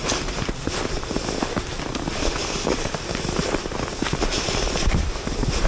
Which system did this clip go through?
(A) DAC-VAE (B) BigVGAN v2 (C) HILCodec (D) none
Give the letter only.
D